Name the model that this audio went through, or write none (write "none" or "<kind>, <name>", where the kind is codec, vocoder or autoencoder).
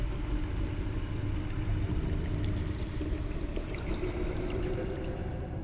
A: none